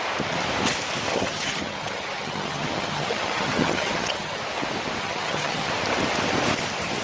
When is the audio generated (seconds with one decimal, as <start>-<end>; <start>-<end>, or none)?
1.1-4.4; 5.0-5.7

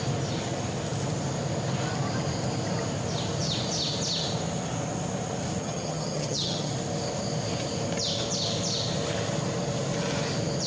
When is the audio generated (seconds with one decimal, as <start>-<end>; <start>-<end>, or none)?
5.6-6.7

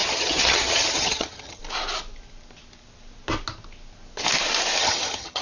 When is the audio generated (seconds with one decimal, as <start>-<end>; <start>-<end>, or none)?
0.0-1.6; 4.8-5.4